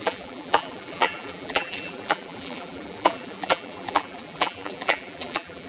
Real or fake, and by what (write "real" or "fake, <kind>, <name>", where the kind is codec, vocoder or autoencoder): fake, vocoder, BigVGAN v2